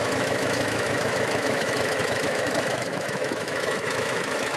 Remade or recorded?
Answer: remade